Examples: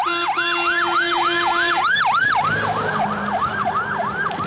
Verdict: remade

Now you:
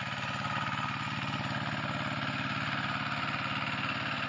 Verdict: recorded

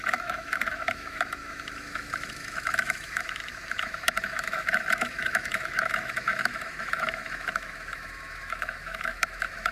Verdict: remade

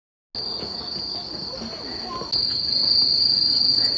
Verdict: recorded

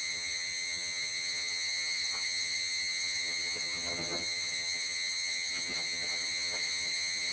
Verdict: remade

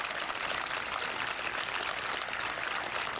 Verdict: recorded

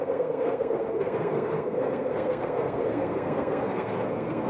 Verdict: remade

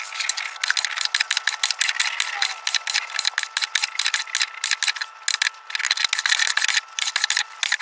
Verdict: recorded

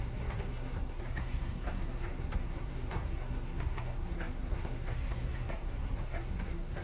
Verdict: remade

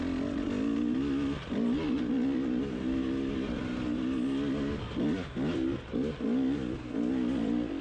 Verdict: recorded